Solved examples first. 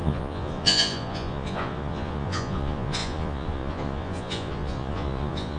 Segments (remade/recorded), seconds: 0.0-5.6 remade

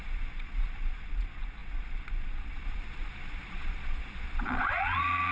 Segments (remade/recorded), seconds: 0.0-5.3 remade

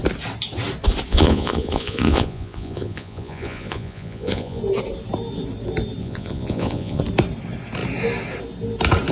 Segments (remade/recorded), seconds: 0.0-1.1 recorded; 1.1-4.6 remade; 4.6-6.0 recorded; 6.0-7.0 remade; 7.0-9.1 recorded

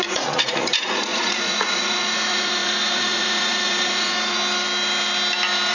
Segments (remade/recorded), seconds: 0.0-4.4 remade; 4.4-5.7 recorded

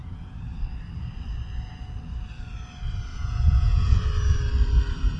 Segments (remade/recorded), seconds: 0.0-0.6 remade; 0.6-3.1 recorded; 3.1-4.1 remade; 4.1-5.2 recorded

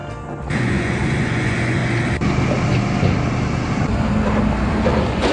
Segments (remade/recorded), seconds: 0.0-0.6 recorded; 0.6-1.8 remade; 1.8-4.7 recorded; 4.7-5.3 remade

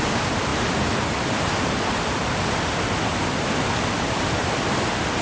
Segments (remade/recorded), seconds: 0.0-5.2 recorded